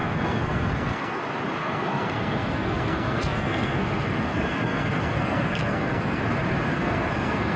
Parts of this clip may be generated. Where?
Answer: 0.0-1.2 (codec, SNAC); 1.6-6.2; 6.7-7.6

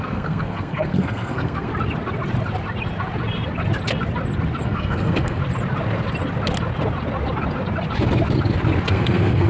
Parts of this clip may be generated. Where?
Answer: 0.0-1.7 (codec, SNAC); 4.6-5.4; 8.9-9.5

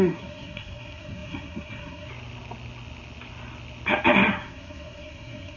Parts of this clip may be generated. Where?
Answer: 0.0-2.1 (codec, SNAC); 4.3-5.6